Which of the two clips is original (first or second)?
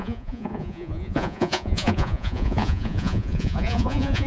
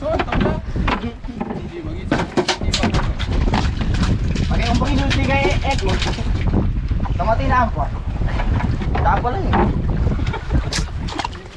second